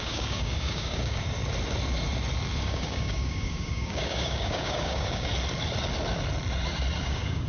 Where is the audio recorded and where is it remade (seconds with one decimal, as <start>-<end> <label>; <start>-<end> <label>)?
0.0-1.4 remade; 1.4-2.6 recorded; 2.6-5.3 remade; 5.3-7.0 recorded; 7.0-7.5 remade

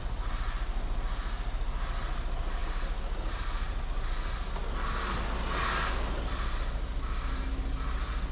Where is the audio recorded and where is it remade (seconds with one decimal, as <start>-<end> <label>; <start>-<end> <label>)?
0.0-8.3 recorded

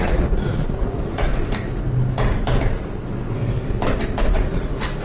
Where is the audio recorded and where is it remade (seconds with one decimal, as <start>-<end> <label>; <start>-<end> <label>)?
0.0-1.3 remade; 1.3-4.3 recorded; 4.3-5.0 remade

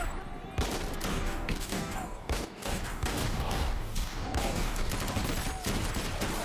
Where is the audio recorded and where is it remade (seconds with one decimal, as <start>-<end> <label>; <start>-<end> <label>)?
0.0-1.1 recorded; 1.1-4.9 remade; 4.9-6.4 recorded

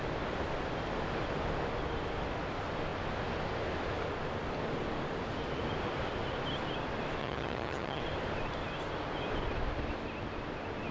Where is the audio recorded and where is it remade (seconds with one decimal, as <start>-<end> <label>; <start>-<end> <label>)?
0.0-7.2 recorded; 7.2-8.0 remade; 8.0-10.9 recorded

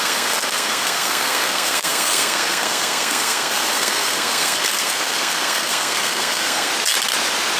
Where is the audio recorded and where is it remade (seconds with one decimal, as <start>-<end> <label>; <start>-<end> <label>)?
0.0-6.7 remade; 6.7-7.6 recorded

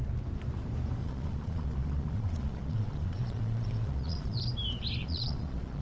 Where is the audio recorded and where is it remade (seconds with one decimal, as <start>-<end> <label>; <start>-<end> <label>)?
0.0-1.0 recorded; 1.0-4.4 remade; 4.4-5.0 recorded; 5.0-5.8 remade